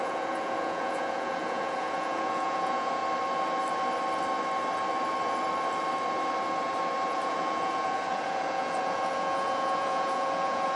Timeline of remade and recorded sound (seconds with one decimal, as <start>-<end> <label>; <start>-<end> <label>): 0.0-3.0 remade; 3.0-7.1 recorded; 7.1-10.8 remade

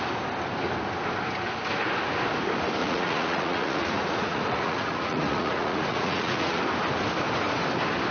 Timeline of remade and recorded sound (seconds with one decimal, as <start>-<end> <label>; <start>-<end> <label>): 0.0-2.8 recorded; 2.8-6.6 remade; 6.6-8.1 recorded

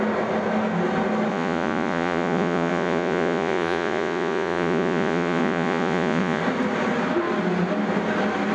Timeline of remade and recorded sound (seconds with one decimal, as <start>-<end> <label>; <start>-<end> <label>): 0.0-1.3 recorded; 1.3-6.4 remade; 6.4-8.5 recorded

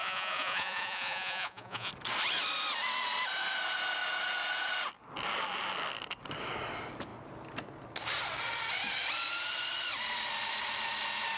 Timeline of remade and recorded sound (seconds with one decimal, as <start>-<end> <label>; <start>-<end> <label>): 0.0-1.9 remade; 1.9-11.4 recorded

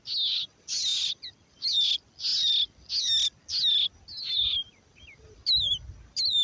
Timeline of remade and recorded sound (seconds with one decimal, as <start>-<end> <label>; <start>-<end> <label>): 0.0-6.4 recorded

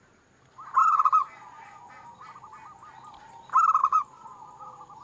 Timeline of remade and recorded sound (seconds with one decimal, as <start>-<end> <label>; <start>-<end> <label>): 0.0-0.8 recorded; 0.8-1.9 remade; 1.9-3.8 recorded; 3.8-4.6 remade; 4.6-5.0 recorded

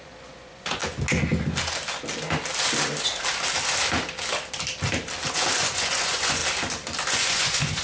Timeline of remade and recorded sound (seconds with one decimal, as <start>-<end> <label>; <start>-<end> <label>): 0.0-0.8 remade; 0.8-5.3 recorded; 5.3-6.4 remade; 6.4-7.1 recorded; 7.1-7.8 remade